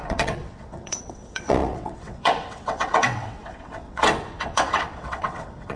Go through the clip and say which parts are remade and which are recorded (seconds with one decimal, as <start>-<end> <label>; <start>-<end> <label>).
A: 0.0-5.8 remade